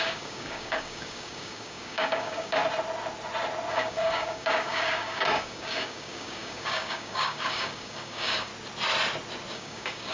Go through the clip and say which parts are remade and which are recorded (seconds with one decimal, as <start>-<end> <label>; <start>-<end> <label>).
0.0-2.6 remade; 2.6-3.7 recorded; 3.7-8.5 remade; 8.5-9.5 recorded; 9.5-10.1 remade